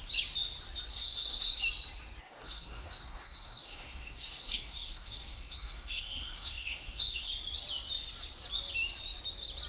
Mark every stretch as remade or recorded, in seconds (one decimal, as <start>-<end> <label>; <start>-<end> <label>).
0.0-0.9 recorded; 0.9-1.6 remade; 1.6-2.2 recorded; 2.2-7.3 remade; 7.3-9.7 recorded